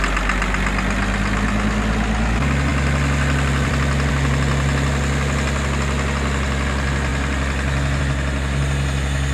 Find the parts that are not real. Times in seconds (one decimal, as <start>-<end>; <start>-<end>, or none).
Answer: 2.7-4.1